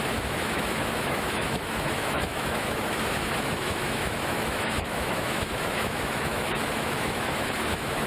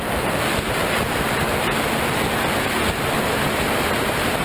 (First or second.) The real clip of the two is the second